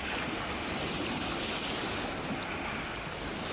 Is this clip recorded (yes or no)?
yes